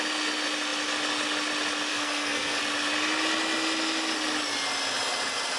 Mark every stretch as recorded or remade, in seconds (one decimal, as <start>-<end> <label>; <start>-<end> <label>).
0.0-1.9 recorded; 1.9-2.6 remade; 2.6-5.6 recorded